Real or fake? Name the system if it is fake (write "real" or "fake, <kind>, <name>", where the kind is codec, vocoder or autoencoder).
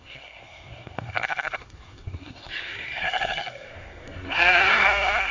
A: fake, codec, SNAC